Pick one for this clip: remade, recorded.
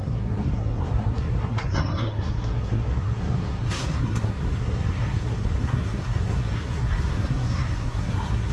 remade